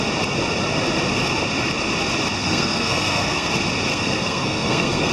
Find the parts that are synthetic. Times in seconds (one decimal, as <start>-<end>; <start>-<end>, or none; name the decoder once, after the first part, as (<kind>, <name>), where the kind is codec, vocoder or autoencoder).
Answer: 2.4-3.5 (codec, SNAC); 3.9-5.1